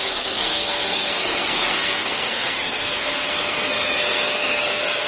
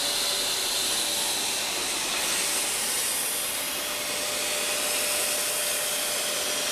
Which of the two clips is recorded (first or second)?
second